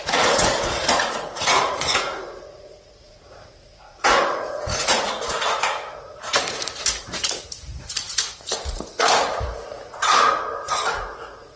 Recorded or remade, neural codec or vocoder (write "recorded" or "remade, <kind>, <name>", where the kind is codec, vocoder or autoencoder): remade, vocoder, Vocos